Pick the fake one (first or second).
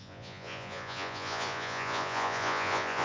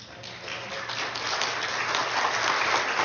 first